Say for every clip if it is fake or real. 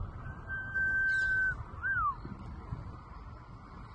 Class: real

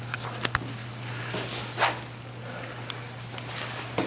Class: real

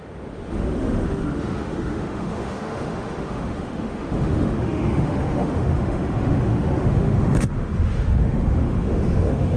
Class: fake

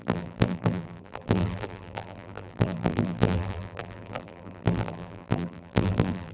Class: fake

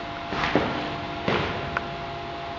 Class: real